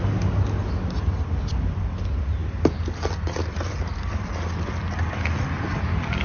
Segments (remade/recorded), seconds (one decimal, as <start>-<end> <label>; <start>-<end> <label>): 0.0-6.2 recorded